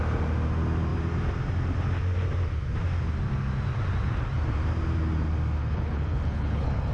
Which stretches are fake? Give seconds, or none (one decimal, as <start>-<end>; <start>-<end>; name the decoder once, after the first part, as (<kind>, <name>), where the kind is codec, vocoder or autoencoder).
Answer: 5.6-6.9 (codec, HILCodec)